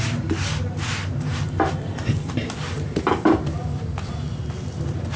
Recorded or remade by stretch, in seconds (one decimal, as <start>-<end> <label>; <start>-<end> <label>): 0.0-1.3 recorded; 1.3-4.4 remade; 4.4-5.2 recorded